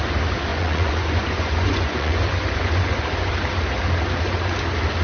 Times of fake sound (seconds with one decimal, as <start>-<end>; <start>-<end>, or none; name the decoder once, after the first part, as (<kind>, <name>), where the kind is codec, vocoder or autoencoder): 0.5-3.3 (vocoder, Vocos)